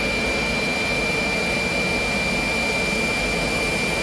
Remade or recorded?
recorded